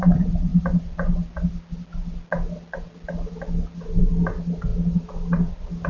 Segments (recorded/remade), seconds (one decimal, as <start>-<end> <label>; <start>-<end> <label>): 0.0-5.9 recorded